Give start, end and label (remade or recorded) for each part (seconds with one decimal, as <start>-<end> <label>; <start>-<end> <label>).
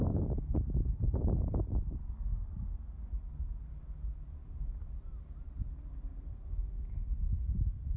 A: 0.0-8.0 recorded